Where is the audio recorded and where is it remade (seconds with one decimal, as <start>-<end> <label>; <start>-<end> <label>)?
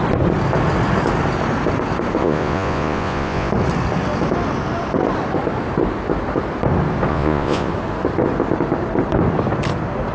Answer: 0.0-2.2 recorded; 2.2-3.5 remade; 3.5-7.1 recorded; 7.1-7.7 remade; 7.7-10.1 recorded